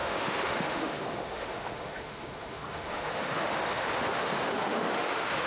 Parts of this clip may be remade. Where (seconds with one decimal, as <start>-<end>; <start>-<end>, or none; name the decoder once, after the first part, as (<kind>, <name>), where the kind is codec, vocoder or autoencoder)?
0.0-5.5 (autoencoder, DAC-VAE)